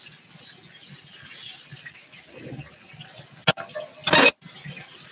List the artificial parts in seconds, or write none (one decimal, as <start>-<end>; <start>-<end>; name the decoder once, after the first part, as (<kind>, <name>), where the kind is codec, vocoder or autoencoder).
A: none